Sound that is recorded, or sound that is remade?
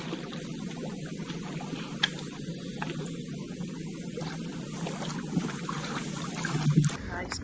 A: recorded